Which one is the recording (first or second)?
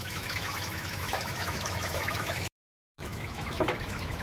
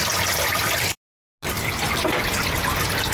second